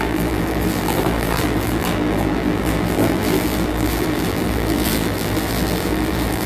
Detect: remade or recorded remade